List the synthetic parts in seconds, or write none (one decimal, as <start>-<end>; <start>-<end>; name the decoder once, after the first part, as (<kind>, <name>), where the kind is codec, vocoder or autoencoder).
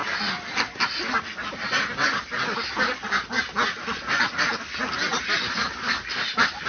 none